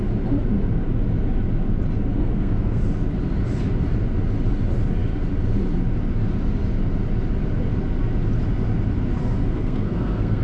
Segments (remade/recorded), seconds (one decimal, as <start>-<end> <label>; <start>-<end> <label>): 0.0-2.1 recorded; 2.1-2.8 remade; 2.8-9.2 recorded; 9.2-10.4 remade